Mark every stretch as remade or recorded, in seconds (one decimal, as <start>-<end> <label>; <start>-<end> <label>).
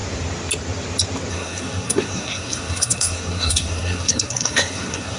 0.0-1.3 recorded; 1.3-5.2 remade